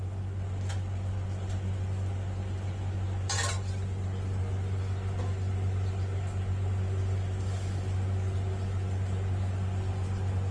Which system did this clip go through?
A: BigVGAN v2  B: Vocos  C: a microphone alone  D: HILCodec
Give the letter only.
C